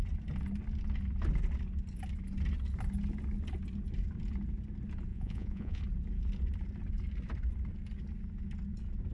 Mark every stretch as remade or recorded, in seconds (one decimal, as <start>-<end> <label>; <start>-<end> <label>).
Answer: 0.0-5.1 recorded; 5.1-5.8 remade; 5.8-9.1 recorded